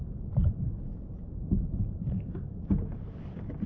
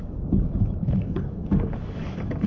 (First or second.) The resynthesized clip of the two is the second